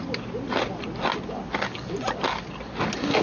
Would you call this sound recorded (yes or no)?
yes